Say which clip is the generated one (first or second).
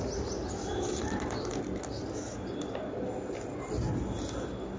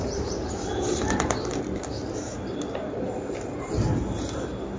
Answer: second